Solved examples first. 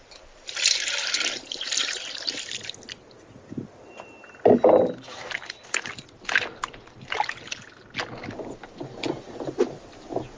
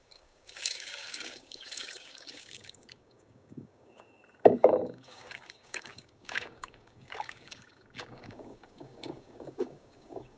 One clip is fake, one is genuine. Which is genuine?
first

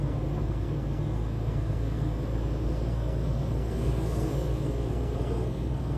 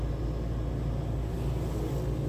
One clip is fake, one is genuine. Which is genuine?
second